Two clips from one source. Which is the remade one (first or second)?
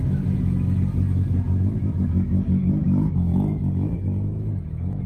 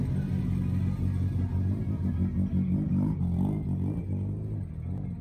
first